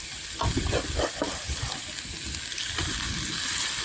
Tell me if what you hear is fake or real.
real